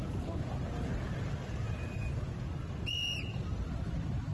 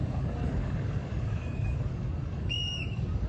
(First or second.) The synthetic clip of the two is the second